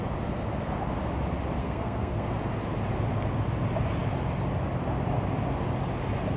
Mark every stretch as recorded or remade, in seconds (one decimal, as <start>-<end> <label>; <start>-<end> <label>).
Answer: 0.0-1.6 recorded; 1.6-2.3 remade; 2.3-6.4 recorded